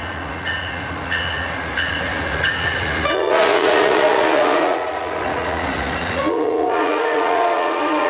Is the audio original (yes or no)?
no